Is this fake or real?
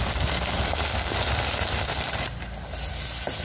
real